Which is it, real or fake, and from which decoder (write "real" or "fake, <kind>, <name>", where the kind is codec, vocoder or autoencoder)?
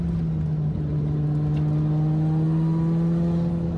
real